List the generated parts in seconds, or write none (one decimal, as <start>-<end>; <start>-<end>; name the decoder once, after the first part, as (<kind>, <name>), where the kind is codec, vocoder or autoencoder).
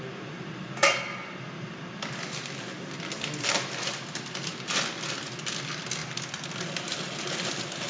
none